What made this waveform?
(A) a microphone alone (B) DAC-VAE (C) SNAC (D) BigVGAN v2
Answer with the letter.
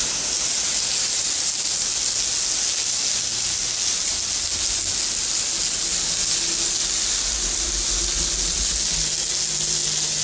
A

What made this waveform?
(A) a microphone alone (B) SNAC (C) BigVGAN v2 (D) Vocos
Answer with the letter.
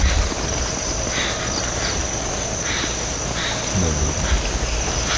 A